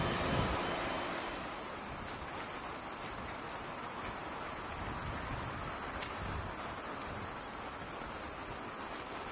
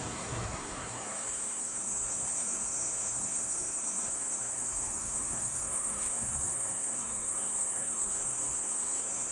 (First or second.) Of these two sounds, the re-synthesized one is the second